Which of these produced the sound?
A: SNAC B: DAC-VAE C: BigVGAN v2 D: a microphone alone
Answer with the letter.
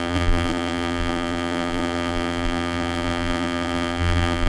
C